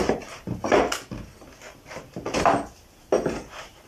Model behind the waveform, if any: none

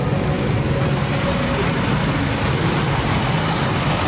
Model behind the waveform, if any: none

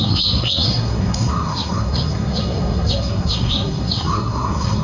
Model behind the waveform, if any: codec, SNAC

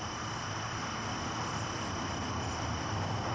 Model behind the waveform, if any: none